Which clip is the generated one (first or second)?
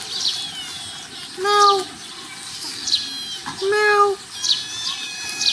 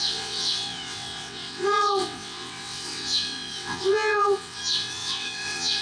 second